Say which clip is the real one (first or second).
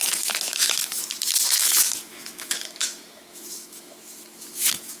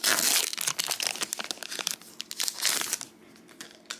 second